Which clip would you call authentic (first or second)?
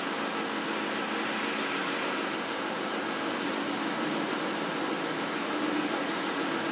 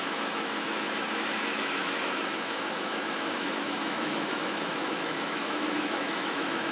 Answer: first